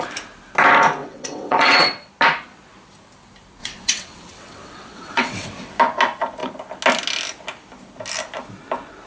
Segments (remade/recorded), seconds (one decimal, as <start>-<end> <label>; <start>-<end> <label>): 0.0-1.0 recorded; 1.0-2.1 remade; 2.1-3.6 recorded; 3.6-5.8 remade; 5.8-9.1 recorded

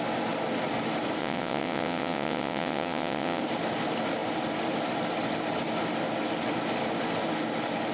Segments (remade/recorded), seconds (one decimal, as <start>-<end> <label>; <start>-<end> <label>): 0.0-1.2 recorded; 1.2-3.4 remade; 3.4-7.9 recorded

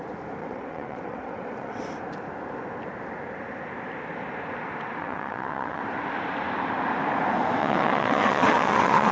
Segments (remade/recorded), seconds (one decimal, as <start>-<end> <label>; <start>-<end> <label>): 0.0-0.4 recorded; 0.4-1.8 remade; 1.8-5.0 recorded; 5.0-5.8 remade; 5.8-7.6 recorded; 7.6-9.1 remade

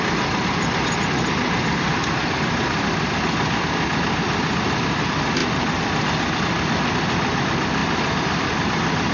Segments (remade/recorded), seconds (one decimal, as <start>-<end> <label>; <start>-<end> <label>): 0.0-9.1 recorded

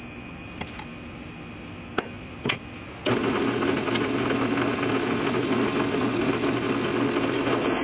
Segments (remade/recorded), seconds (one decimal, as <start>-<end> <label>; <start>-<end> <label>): 0.0-7.8 recorded

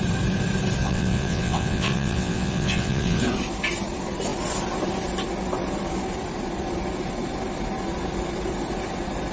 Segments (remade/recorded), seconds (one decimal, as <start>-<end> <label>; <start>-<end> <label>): 0.0-0.8 recorded; 0.8-3.2 remade; 3.2-9.3 recorded